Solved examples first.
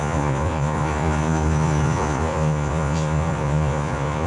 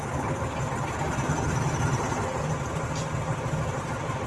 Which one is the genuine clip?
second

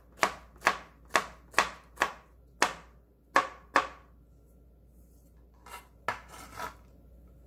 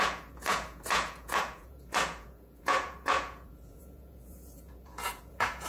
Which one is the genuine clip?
first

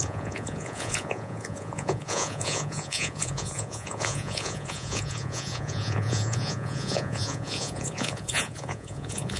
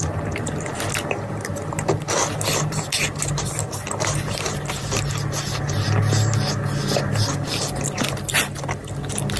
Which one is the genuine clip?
second